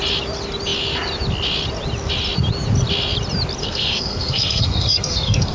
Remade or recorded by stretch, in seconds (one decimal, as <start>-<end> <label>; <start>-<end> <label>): 0.0-3.6 recorded; 3.6-5.5 remade

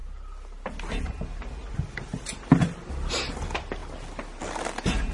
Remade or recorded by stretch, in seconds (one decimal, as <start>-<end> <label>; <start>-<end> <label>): 0.0-5.1 recorded

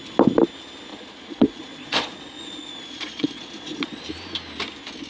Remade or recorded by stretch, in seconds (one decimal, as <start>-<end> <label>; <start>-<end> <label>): 0.0-0.9 recorded; 0.9-4.0 remade; 4.0-5.1 recorded

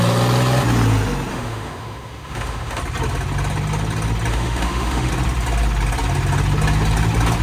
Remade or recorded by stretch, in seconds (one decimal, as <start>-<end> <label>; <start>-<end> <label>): 0.0-1.3 recorded; 1.3-2.8 remade; 2.8-4.3 recorded; 4.3-5.1 remade; 5.1-7.4 recorded

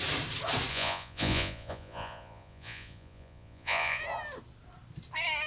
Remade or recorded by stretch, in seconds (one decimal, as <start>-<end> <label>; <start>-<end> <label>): 0.0-0.7 recorded; 0.7-4.0 remade; 4.0-5.5 recorded

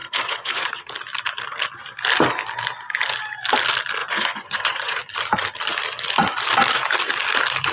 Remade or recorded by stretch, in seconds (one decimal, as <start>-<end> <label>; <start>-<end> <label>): 0.0-0.8 remade; 0.8-4.0 recorded; 4.0-5.0 remade; 5.0-7.7 recorded

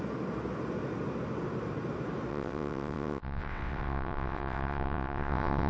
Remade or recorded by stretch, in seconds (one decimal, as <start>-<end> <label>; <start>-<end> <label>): 0.0-2.3 recorded; 2.3-5.7 remade

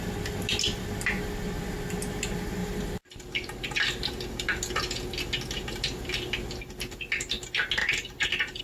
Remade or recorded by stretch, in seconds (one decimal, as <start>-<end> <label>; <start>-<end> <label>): 0.0-2.6 recorded; 2.6-4.2 remade; 4.2-7.8 recorded; 7.8-8.6 remade